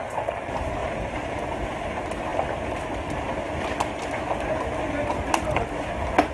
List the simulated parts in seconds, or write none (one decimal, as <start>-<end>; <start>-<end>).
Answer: 0.8-1.4